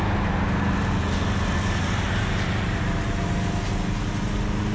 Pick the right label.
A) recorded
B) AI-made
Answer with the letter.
A